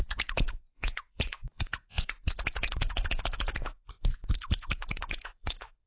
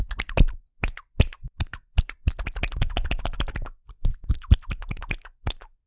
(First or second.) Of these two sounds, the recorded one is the second